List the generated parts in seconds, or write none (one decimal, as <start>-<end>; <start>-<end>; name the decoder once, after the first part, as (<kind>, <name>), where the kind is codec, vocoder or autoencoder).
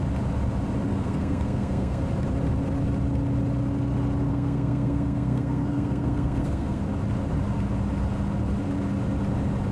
0.9-2.0 (codec, SNAC); 4.3-6.8